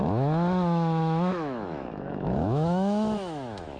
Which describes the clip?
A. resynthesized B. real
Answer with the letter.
A